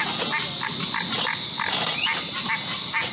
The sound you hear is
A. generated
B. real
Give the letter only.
B